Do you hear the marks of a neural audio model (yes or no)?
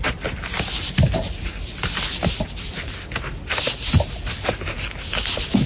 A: no